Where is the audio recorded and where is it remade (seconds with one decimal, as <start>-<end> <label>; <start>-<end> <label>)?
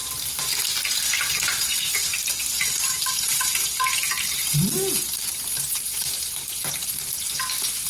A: 0.0-0.9 recorded; 0.9-7.9 remade